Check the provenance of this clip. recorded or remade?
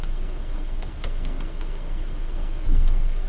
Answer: remade